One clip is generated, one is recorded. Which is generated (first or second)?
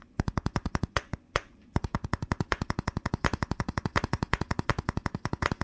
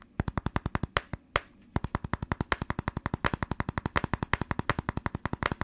first